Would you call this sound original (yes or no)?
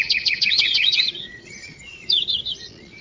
no